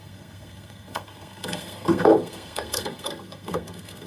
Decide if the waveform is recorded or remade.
remade